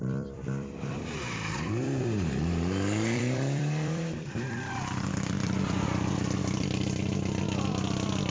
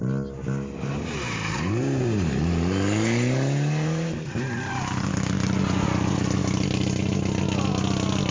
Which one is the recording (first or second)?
second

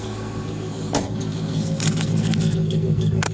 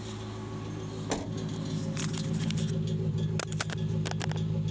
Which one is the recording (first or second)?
second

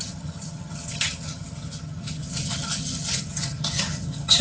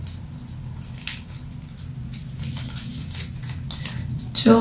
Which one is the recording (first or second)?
second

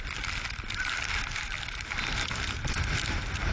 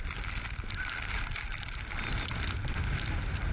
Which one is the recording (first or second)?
second